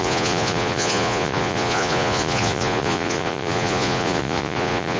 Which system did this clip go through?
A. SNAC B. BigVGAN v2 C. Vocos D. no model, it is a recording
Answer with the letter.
C